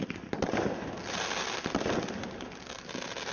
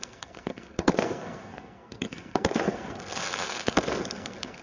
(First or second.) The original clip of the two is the first